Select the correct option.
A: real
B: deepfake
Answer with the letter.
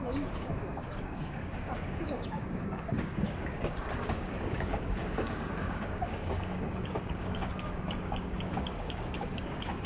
B